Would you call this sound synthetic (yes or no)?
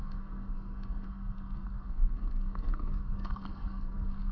yes